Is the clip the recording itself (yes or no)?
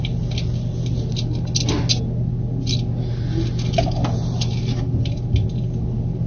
yes